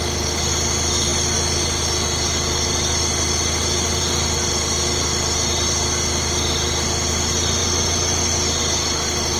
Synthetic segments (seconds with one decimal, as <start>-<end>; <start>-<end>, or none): none